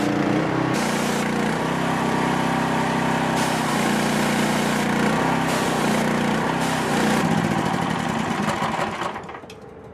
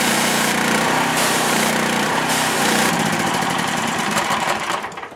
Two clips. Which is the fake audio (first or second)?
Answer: second